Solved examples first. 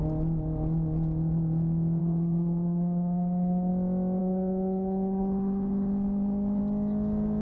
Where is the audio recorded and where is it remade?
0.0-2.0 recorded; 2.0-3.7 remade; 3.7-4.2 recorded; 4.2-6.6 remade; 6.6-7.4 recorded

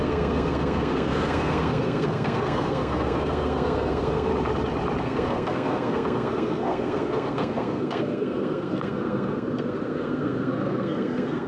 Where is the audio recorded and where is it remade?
0.0-4.3 remade; 4.3-5.0 recorded; 5.0-11.5 remade

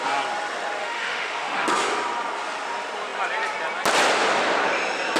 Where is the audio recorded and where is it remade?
0.0-0.8 recorded; 0.8-1.7 remade; 1.7-5.2 recorded

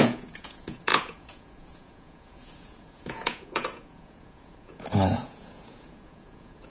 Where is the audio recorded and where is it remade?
0.0-6.7 remade

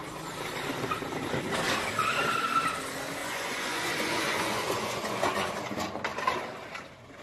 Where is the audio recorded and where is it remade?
0.0-3.2 recorded; 3.2-5.5 remade; 5.5-7.2 recorded

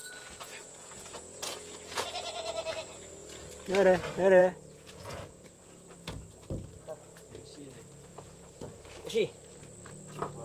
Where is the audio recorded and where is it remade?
0.0-3.5 remade; 3.5-4.4 recorded; 4.4-5.6 remade; 5.6-8.1 recorded; 8.1-9.1 remade; 9.1-10.4 recorded